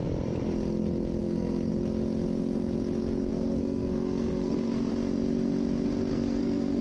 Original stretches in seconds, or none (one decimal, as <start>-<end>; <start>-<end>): 0.0-1.2; 1.7-3.3; 4.9-6.1